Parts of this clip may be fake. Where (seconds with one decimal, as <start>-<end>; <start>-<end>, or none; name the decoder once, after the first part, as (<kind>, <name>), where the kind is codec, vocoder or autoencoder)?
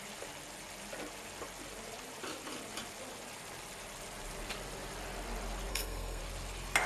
5.7-6.2 (codec, SNAC)